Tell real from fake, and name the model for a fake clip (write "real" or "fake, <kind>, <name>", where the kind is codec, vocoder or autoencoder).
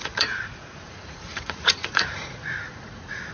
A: fake, vocoder, Vocos